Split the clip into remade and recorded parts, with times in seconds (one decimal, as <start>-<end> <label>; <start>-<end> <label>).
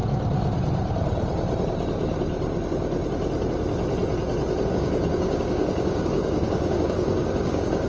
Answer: 0.0-4.7 recorded; 4.7-7.9 remade